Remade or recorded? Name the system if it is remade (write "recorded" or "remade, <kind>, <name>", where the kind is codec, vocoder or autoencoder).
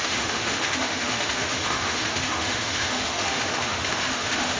remade, autoencoder, DAC-VAE